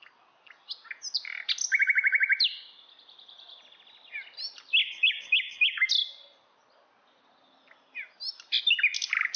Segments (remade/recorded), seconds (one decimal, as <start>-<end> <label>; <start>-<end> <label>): 0.0-4.8 recorded; 4.8-5.9 remade; 5.9-9.4 recorded